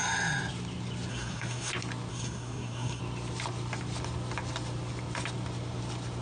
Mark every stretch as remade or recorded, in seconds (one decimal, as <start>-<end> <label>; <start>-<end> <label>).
0.0-1.1 recorded; 1.1-1.7 remade; 1.7-2.1 recorded; 2.1-3.0 remade; 3.0-6.2 recorded